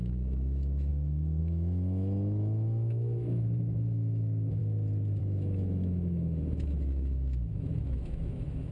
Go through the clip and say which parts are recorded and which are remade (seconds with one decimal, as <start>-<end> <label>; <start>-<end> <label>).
0.0-0.9 remade; 0.9-1.4 recorded; 1.4-4.6 remade; 4.6-5.2 recorded; 5.2-8.7 remade